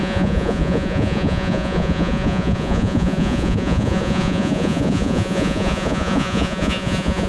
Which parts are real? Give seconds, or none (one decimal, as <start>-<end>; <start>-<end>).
none